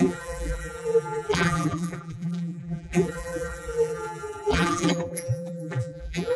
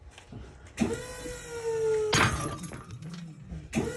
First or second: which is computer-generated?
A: first